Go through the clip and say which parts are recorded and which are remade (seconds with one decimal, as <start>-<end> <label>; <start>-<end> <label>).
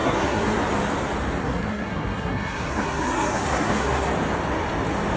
0.0-0.6 remade; 0.6-1.4 recorded; 1.4-4.1 remade; 4.1-5.2 recorded